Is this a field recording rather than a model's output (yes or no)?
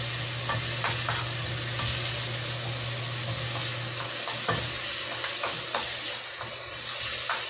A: yes